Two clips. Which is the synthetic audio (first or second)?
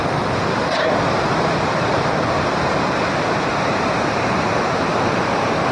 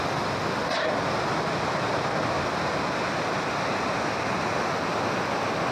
first